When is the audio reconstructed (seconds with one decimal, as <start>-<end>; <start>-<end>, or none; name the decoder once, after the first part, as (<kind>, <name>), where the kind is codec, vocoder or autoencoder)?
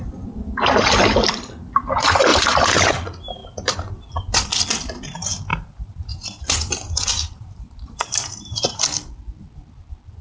2.3-2.9 (vocoder, BigVGAN v2); 3.4-3.9; 5.5-8.8